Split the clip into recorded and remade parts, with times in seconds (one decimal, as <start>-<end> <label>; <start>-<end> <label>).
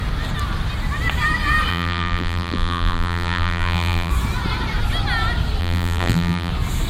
0.0-1.7 recorded; 1.7-4.1 remade; 4.1-5.6 recorded; 5.6-6.5 remade; 6.5-6.9 recorded